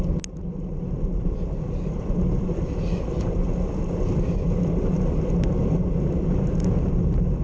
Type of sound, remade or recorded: recorded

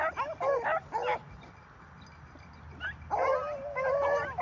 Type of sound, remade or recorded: recorded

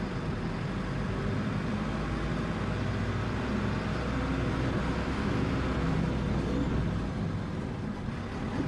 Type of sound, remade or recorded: recorded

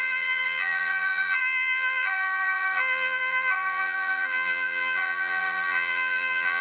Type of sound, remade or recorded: remade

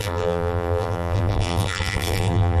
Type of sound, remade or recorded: remade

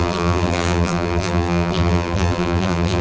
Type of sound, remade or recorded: remade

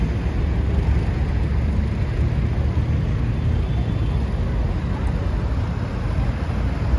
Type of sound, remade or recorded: recorded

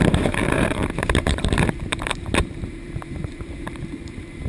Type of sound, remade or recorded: remade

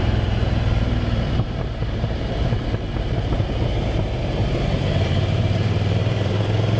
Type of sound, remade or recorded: remade